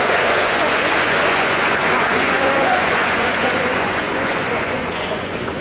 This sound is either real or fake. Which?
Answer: fake